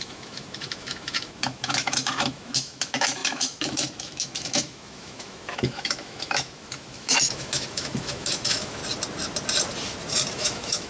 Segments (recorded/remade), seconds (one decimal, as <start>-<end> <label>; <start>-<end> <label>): 0.0-8.8 remade; 8.8-10.3 recorded; 10.3-10.9 remade